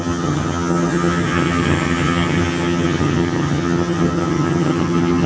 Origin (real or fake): fake